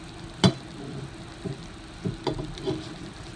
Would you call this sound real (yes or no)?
yes